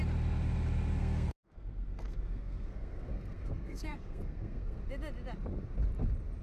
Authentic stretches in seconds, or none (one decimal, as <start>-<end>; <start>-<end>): 0.0-1.0; 4.8-6.4